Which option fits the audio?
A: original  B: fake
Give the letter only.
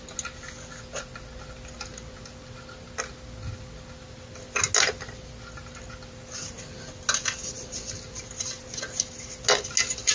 A